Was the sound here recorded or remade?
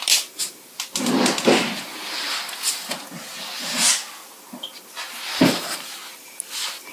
recorded